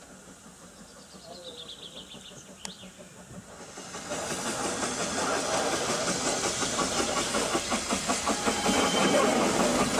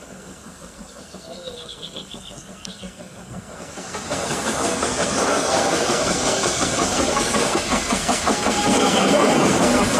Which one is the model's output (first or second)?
second